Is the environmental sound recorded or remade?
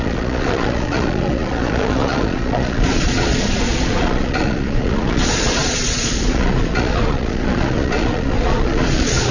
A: remade